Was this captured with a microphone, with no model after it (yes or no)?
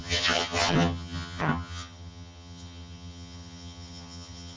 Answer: no